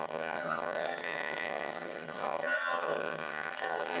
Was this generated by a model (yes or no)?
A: yes